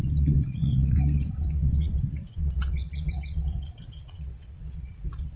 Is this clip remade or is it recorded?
remade